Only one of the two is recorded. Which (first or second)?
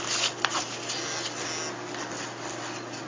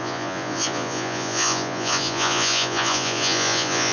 first